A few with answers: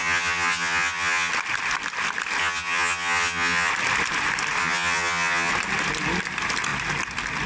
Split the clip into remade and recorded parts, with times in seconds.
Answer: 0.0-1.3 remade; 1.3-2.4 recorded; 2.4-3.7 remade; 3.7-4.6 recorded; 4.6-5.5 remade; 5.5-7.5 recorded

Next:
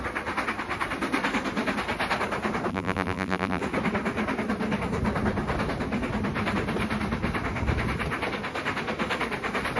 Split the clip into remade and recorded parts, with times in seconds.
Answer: 0.0-2.7 recorded; 2.7-3.6 remade; 3.6-9.8 recorded

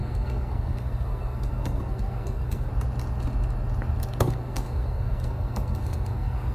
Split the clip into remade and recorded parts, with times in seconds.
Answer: 0.0-2.7 remade; 2.7-4.2 recorded; 4.2-6.5 remade

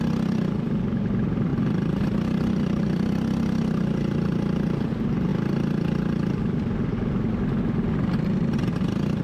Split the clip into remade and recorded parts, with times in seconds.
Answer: 0.0-9.2 recorded

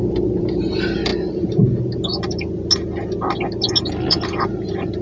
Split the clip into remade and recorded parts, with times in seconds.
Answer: 0.0-1.1 remade; 1.1-4.1 recorded; 4.1-5.0 remade